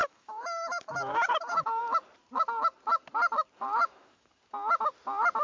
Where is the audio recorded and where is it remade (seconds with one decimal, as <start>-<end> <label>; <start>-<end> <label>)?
0.0-1.8 remade; 1.8-3.8 recorded; 3.8-4.4 remade; 4.4-5.4 recorded